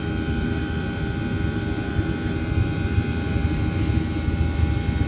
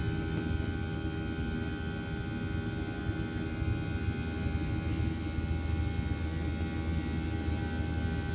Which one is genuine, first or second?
second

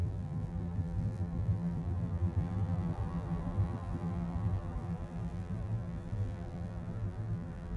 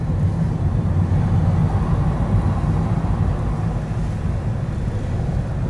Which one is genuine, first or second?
second